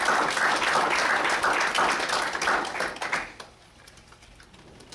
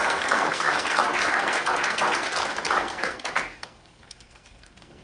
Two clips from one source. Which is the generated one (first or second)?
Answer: second